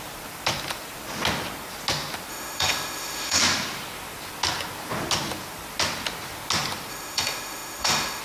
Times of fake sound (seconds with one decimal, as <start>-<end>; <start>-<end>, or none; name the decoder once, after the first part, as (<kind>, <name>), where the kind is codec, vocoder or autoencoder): 2.3-3.4 (autoencoder, DAC-VAE); 6.9-8.2